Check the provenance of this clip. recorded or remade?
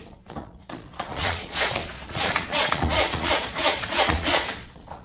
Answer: remade